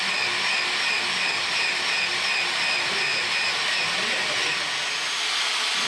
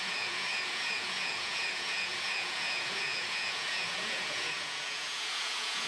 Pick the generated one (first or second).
second